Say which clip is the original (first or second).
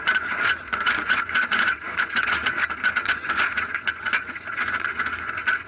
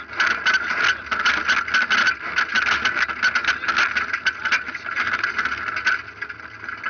second